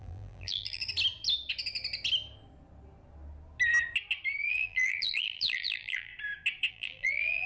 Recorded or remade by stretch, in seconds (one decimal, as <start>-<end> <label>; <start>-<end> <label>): 0.0-0.8 remade; 0.8-4.5 recorded; 4.5-6.1 remade; 6.1-6.7 recorded; 6.7-7.5 remade